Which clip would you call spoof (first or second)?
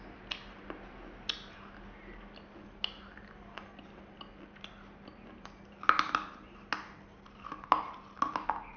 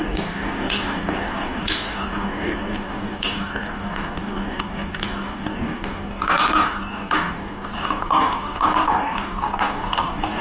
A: second